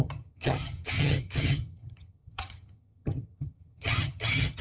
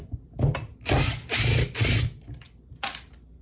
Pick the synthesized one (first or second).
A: first